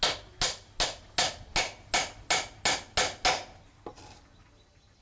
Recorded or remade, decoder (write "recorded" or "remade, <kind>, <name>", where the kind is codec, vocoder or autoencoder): recorded